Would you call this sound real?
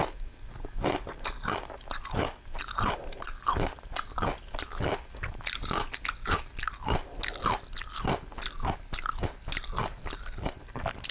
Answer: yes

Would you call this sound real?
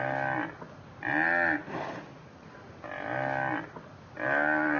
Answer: yes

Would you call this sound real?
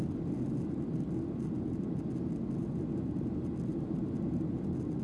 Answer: yes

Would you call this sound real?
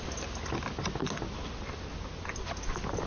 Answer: yes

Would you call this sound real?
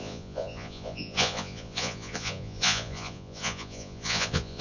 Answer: no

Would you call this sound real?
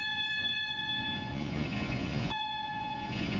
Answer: no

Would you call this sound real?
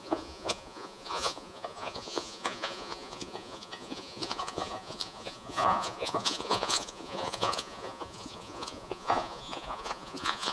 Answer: no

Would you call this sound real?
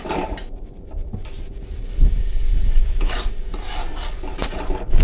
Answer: yes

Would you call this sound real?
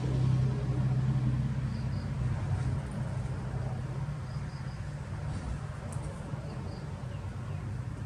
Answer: yes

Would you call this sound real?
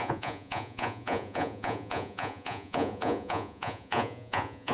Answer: no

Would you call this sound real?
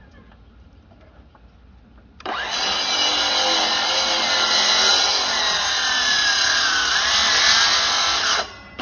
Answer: yes